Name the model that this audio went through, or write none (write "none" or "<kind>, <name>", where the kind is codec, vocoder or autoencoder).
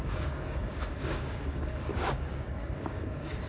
codec, DAC